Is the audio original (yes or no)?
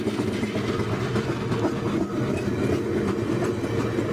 yes